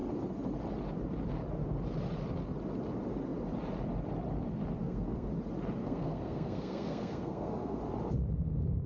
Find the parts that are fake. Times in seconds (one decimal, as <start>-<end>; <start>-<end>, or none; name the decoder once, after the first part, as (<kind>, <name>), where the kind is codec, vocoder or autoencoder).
4.8-5.3 (codec, SNAC); 5.8-7.8